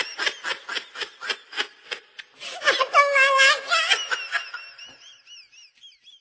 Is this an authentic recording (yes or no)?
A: yes